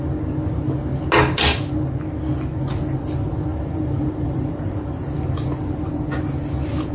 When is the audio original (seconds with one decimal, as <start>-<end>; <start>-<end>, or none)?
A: 0.0-3.5; 5.9-6.9